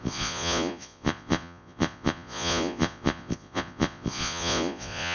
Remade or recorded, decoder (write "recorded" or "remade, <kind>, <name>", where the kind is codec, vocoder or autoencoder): remade, vocoder, Vocos